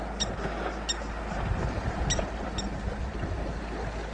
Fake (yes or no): no